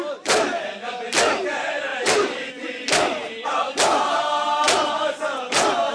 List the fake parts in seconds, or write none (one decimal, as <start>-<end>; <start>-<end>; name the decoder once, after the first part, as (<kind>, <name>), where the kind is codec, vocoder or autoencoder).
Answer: 1.9-2.5 (vocoder, BigVGAN v2); 3.9-4.5